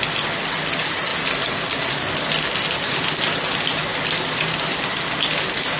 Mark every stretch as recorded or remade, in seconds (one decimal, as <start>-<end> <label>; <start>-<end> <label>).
0.0-5.8 recorded